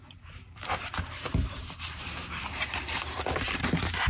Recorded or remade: remade